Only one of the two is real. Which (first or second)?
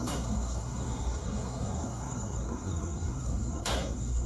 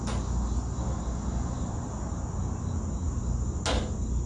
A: second